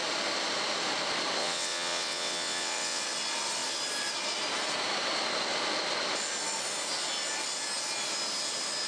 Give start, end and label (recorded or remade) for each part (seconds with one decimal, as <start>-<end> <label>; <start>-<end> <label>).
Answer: 0.0-1.4 recorded; 1.4-3.0 remade; 3.0-8.9 recorded